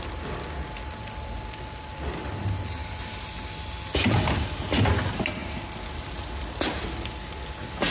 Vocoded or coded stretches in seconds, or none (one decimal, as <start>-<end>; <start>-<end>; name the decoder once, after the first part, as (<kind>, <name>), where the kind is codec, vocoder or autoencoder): none